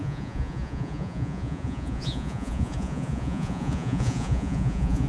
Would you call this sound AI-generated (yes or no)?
yes